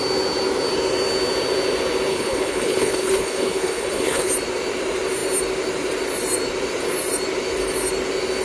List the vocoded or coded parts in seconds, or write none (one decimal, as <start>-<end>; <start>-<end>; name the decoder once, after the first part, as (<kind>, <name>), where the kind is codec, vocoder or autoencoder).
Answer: 2.1-4.3 (codec, HILCodec)